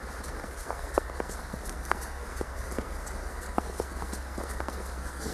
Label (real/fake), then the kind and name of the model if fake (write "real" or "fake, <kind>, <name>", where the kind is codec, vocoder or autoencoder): fake, codec, SNAC